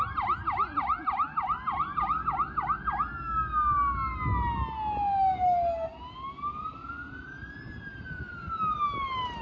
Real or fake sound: real